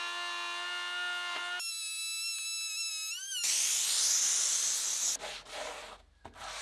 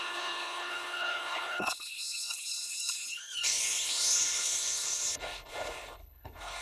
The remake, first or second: second